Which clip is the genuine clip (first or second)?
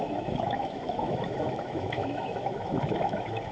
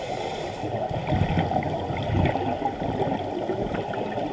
second